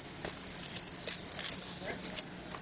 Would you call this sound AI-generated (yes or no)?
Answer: no